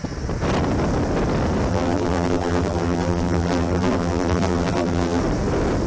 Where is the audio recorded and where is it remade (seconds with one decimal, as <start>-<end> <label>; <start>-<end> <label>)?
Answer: 0.0-1.7 recorded; 1.7-5.2 remade; 5.2-5.9 recorded